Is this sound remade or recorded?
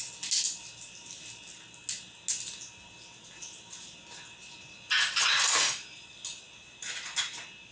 recorded